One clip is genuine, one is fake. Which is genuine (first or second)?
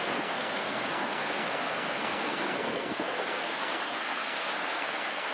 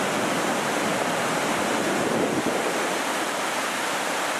second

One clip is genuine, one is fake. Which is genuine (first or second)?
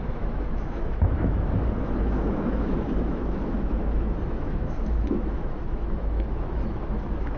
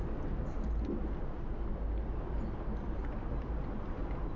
second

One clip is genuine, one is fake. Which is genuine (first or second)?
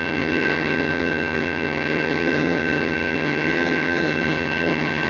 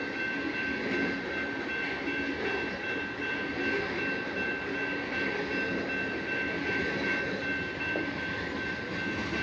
second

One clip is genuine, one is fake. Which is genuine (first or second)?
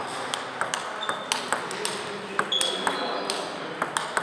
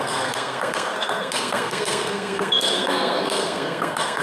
first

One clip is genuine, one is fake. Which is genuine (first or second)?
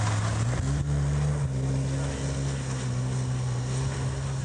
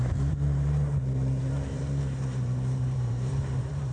first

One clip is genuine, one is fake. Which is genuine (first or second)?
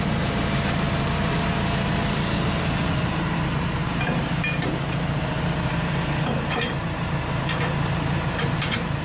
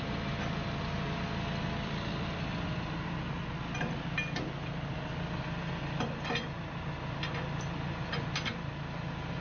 second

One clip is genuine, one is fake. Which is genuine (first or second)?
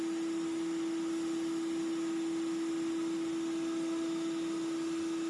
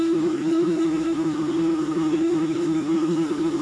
first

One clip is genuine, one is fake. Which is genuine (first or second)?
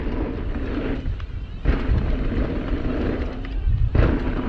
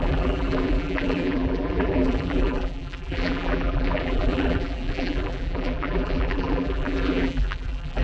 first